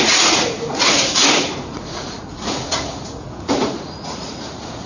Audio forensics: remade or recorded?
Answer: remade